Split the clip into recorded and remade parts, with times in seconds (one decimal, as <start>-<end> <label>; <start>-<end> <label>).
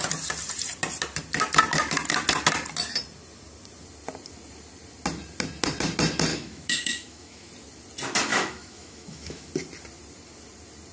0.0-6.3 recorded; 6.3-7.5 remade; 7.5-8.3 recorded; 8.3-9.5 remade; 9.5-10.9 recorded